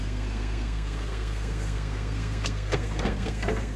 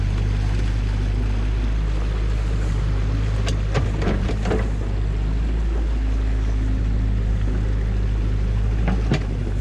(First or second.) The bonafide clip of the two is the second